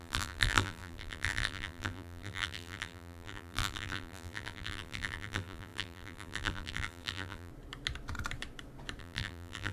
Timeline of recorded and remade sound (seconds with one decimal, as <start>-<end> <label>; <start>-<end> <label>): 0.0-7.5 remade; 7.5-9.0 recorded; 9.0-9.7 remade